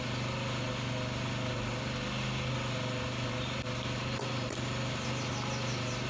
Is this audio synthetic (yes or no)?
no